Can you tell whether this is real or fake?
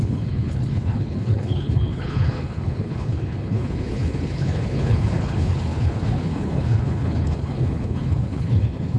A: fake